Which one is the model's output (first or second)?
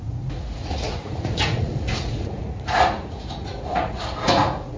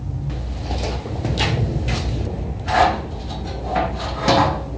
first